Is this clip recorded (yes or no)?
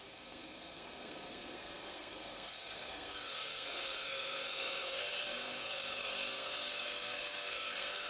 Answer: no